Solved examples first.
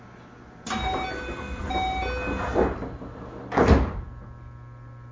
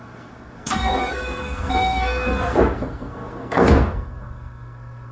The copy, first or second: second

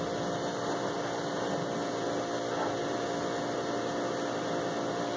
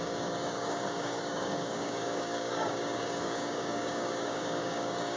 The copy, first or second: second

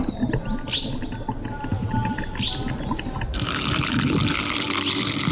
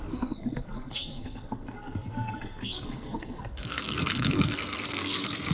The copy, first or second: second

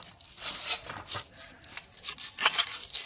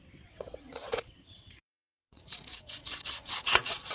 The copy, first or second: second